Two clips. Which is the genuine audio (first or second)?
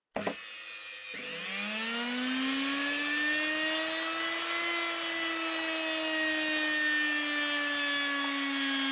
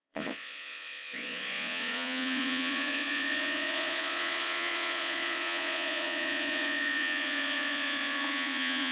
first